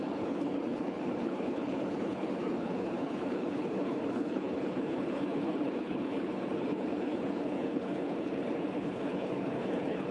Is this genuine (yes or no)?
no